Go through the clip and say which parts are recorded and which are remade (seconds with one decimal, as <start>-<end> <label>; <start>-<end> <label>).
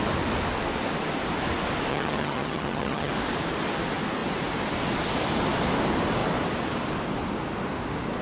0.0-1.9 recorded; 1.9-3.1 remade; 3.1-8.2 recorded